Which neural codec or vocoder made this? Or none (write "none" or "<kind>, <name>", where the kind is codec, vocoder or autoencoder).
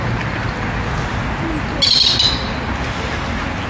none